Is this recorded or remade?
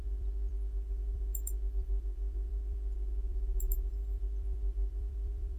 remade